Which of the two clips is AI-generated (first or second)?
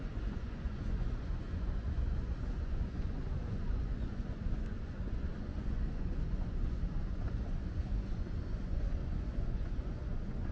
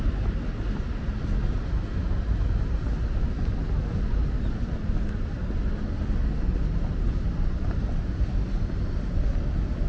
first